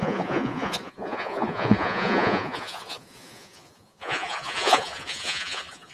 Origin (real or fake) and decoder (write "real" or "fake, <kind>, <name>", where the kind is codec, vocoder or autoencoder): fake, vocoder, Vocos